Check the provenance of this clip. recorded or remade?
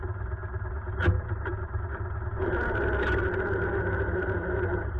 recorded